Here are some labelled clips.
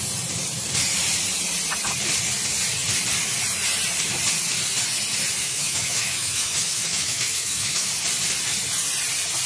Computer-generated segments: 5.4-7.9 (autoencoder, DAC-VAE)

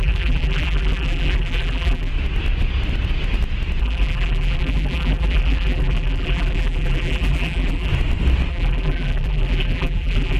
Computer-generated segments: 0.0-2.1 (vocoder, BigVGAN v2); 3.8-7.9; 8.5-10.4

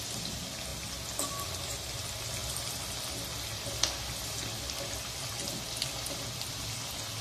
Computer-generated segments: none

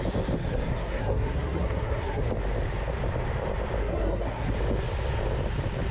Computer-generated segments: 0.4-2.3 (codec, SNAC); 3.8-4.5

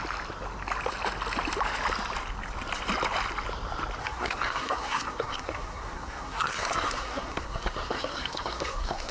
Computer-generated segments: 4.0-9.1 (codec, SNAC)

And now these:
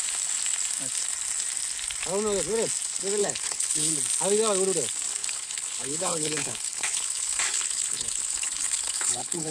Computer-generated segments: 3.2-3.9 (codec, HILCodec); 5.2-9.5

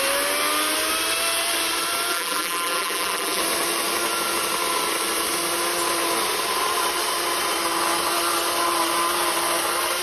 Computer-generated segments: 2.1-3.4 (vocoder, BigVGAN v2)

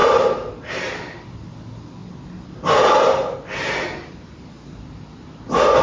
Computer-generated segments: none